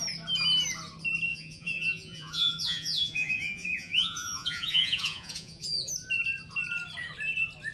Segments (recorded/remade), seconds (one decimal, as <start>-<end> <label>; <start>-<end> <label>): 0.0-1.3 recorded; 1.3-5.9 remade; 5.9-7.7 recorded